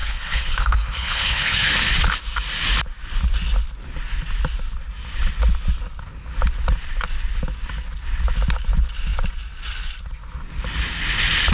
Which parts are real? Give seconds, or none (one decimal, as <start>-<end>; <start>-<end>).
1.7-11.5